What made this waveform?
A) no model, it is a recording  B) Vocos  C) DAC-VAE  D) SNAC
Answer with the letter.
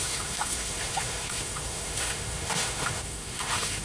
C